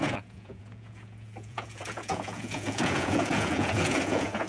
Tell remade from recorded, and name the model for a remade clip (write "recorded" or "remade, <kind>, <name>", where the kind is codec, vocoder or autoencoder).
remade, vocoder, Vocos